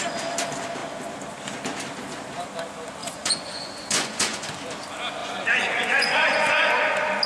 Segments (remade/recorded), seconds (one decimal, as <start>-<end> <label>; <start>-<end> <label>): 0.0-3.0 recorded; 3.0-4.5 remade; 4.5-5.2 recorded; 5.2-6.7 remade; 6.7-7.3 recorded